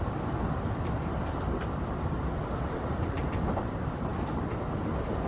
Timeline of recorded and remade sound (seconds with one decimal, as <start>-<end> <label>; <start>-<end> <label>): 0.0-5.3 remade